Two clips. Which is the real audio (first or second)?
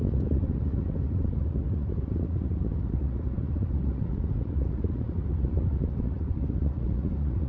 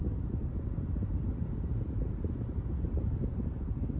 second